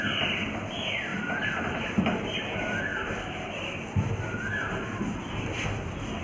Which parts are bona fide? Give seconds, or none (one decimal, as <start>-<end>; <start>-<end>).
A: 0.0-6.2